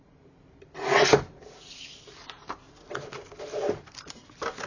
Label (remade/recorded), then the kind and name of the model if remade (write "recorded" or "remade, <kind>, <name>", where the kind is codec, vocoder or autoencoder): recorded